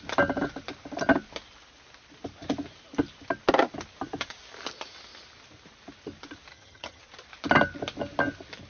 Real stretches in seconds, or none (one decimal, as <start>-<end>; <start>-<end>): 0.0-6.5; 7.0-8.7